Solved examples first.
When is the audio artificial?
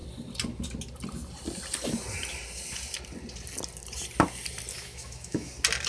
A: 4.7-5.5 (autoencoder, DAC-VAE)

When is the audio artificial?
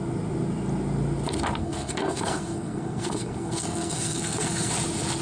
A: 1.6-4.7 (codec, SNAC)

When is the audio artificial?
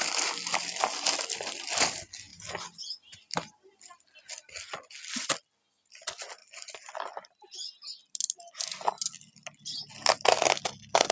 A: none